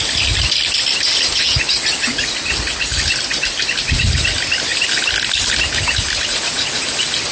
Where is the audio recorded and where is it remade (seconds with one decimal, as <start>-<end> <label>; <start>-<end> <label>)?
0.0-6.3 recorded; 6.3-6.8 remade; 6.8-7.3 recorded